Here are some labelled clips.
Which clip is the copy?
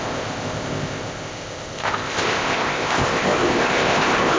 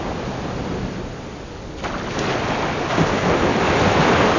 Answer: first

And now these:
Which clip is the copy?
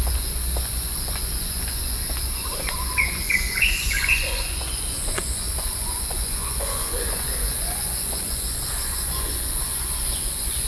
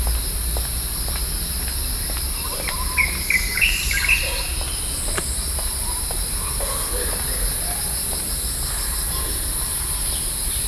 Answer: first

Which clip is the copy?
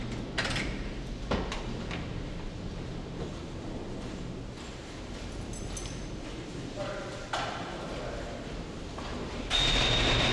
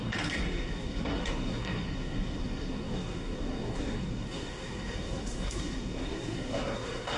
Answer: second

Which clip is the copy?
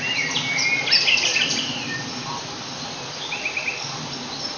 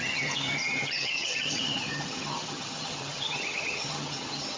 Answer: second